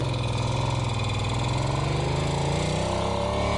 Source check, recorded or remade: recorded